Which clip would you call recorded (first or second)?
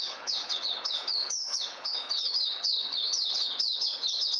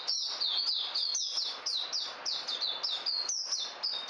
second